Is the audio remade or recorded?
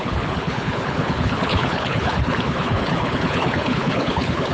remade